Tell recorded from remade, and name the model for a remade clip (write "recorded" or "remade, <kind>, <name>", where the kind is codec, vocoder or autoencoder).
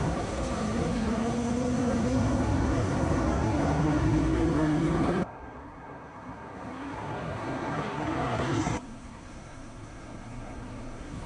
remade, codec, SNAC